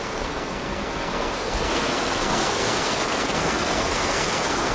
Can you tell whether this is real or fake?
fake